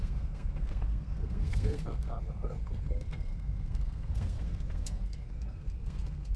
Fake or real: fake